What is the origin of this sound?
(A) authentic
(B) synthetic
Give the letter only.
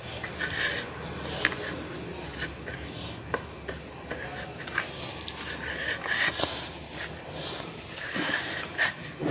A